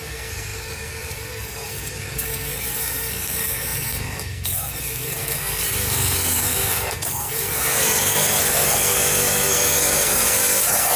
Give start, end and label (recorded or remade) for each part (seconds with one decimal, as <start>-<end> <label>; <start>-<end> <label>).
0.0-11.0 remade